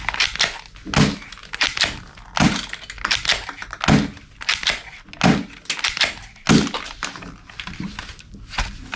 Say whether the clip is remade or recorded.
recorded